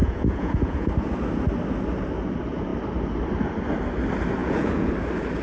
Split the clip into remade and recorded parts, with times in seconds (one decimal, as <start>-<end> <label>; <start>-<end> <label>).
0.0-0.9 remade; 0.9-4.4 recorded; 4.4-4.9 remade; 4.9-5.4 recorded